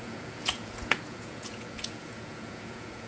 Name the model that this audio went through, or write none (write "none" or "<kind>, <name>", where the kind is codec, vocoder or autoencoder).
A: vocoder, Vocos